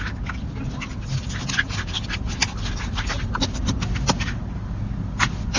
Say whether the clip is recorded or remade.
recorded